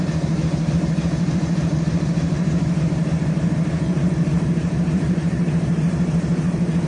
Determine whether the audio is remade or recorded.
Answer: remade